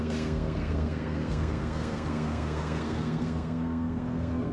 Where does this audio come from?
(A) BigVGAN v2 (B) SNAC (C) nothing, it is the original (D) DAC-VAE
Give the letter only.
B